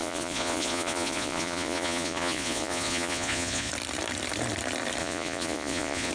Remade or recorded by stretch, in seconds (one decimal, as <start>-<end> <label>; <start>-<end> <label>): 0.0-3.7 remade; 3.7-5.0 recorded; 5.0-6.1 remade